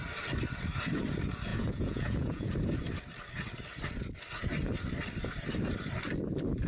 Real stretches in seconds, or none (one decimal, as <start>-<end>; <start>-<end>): 0.0-1.5; 2.5-6.7